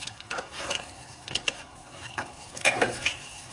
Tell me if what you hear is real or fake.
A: fake